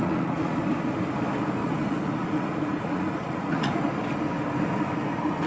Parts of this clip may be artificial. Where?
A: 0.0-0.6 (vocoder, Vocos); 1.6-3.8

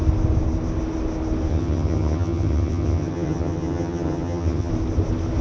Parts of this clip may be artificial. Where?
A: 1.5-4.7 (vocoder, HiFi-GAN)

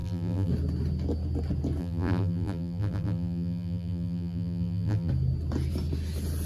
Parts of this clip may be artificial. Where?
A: 0.0-0.5 (vocoder, BigVGAN v2); 1.8-5.1

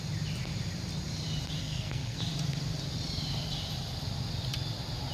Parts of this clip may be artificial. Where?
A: 1.6-2.2 (codec, SNAC)

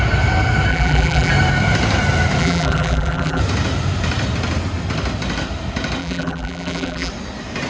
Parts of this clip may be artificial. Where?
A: 0.7-1.3 (vocoder, BigVGAN v2); 2.4-3.4; 6.0-7.1

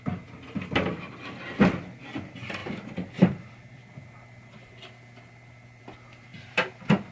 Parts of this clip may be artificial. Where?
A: none

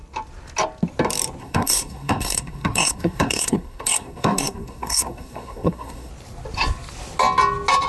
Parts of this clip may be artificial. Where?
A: 1.4-6.1 (codec, SNAC)

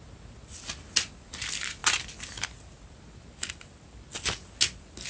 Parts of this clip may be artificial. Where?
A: none